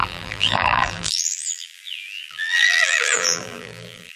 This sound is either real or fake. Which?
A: fake